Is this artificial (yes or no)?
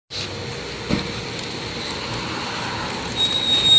no